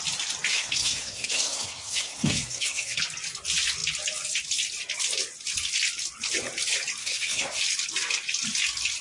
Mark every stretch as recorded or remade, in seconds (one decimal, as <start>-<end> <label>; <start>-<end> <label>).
0.0-0.5 recorded; 0.5-3.0 remade; 3.0-7.0 recorded; 7.0-7.6 remade; 7.6-9.0 recorded